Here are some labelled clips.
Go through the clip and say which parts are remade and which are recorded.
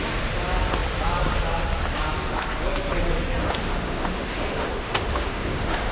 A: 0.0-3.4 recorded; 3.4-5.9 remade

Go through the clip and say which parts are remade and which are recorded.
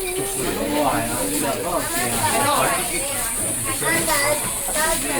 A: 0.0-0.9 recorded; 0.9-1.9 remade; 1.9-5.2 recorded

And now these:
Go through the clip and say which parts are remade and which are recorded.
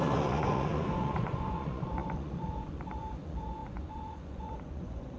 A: 0.0-5.2 remade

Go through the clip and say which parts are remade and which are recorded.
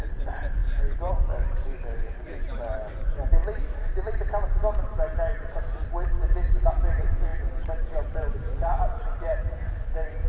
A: 0.0-3.4 remade; 3.4-6.7 recorded; 6.7-10.3 remade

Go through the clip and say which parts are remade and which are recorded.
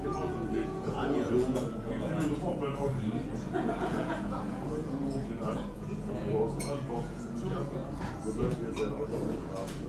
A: 0.0-2.9 remade; 2.9-3.4 recorded; 3.4-7.8 remade; 7.8-8.3 recorded; 8.3-9.9 remade